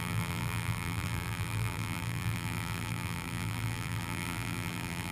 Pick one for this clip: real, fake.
fake